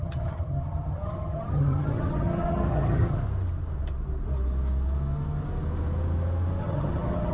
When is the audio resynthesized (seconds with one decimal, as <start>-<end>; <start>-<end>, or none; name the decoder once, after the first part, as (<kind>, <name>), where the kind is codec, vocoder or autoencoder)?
0.0-3.2 (vocoder, HiFi-GAN); 6.6-7.3